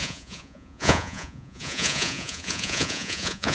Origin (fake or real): fake